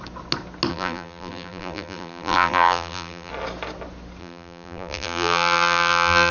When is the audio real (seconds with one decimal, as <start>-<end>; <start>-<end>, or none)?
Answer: 0.0-0.7; 3.3-4.2